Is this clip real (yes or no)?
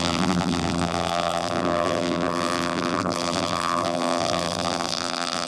no